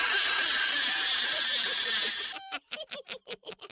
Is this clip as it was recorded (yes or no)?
yes